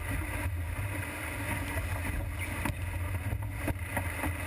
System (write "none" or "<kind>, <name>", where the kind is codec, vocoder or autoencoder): none